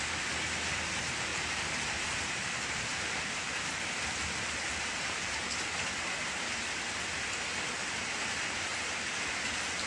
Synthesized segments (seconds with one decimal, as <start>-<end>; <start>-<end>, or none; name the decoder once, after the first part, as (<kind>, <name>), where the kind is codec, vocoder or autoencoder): 1.3-5.4 (vocoder, BigVGAN v2)